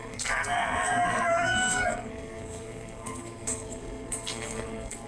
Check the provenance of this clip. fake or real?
fake